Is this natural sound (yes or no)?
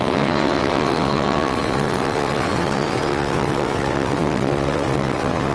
no